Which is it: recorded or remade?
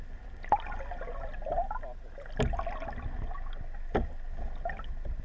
recorded